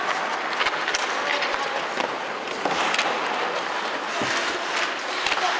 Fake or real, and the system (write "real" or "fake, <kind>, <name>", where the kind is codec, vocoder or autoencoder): real